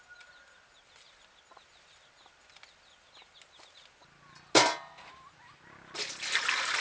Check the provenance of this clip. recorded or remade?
recorded